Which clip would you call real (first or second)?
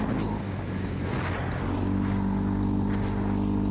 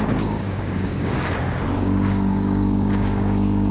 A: first